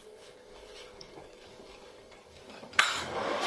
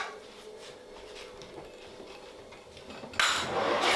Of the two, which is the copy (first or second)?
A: first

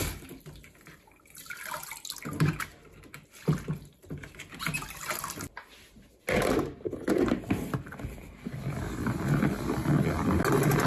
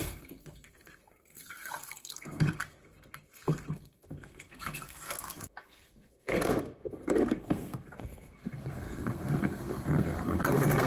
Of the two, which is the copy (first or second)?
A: second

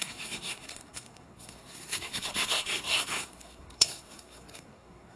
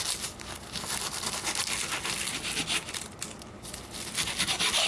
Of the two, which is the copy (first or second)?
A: first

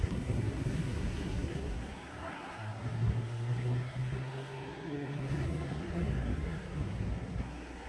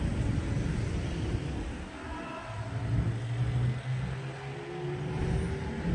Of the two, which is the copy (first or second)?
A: first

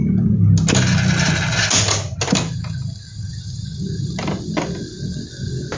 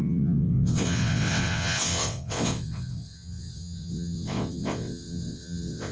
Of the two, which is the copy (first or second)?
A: second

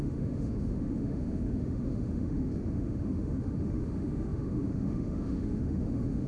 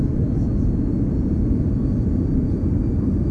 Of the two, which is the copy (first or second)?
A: first